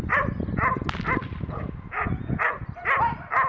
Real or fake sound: real